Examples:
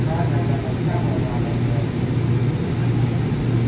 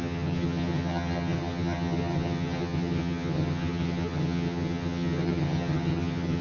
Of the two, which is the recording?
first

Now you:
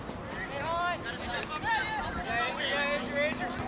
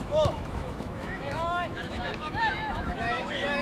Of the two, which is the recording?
first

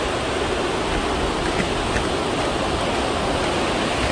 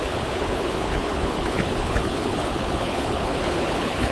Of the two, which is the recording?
first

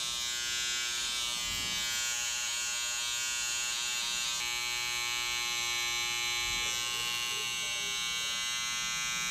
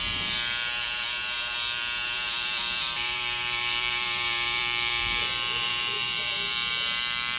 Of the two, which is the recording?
first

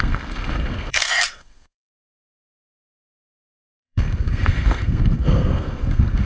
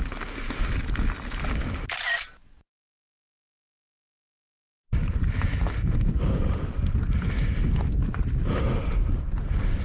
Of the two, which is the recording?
second